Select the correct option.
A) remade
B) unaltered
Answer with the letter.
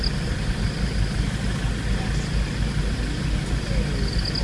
B